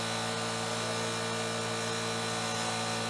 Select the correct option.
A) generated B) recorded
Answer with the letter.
B